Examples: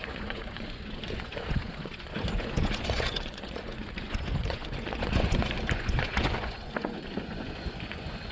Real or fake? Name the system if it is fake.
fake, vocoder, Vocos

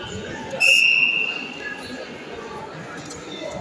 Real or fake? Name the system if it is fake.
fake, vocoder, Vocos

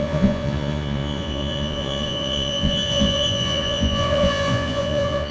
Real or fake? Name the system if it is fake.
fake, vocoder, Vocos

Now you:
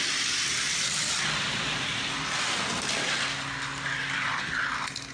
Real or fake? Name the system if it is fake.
real